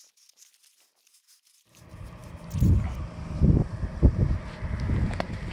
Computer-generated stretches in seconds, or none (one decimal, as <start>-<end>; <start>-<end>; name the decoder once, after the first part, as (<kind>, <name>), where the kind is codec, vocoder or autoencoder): none